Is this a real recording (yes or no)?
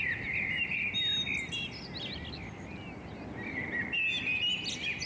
yes